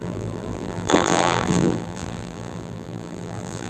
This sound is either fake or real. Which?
fake